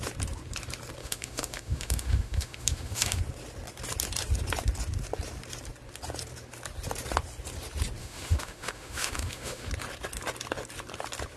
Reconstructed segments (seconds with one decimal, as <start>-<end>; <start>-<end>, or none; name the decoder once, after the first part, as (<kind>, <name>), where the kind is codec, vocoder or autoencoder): 1.0-3.2 (autoencoder, DAC-VAE); 8.0-9.7